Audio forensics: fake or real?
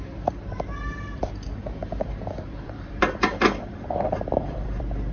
fake